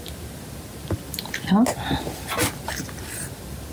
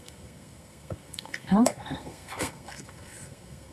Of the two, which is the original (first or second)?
first